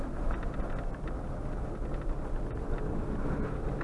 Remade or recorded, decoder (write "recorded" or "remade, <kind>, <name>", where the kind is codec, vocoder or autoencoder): recorded